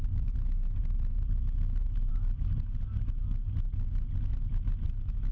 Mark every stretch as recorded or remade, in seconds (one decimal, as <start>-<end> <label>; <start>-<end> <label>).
0.0-5.3 recorded